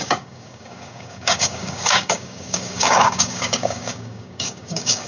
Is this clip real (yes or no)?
no